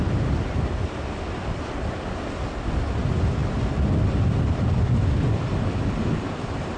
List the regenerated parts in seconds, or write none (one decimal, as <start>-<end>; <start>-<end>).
none